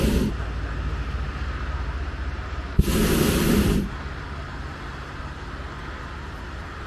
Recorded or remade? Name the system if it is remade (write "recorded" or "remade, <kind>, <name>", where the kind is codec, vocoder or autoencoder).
recorded